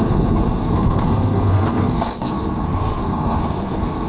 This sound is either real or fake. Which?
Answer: fake